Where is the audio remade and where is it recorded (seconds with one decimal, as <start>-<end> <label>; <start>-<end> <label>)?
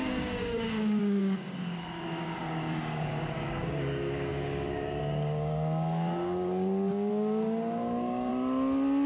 0.0-8.3 remade; 8.3-9.1 recorded